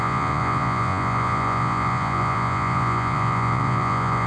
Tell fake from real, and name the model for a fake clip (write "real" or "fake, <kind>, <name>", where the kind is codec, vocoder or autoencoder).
fake, vocoder, Vocos